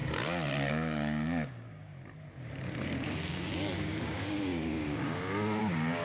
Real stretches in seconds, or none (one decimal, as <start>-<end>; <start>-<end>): 0.0-0.7; 1.9-2.8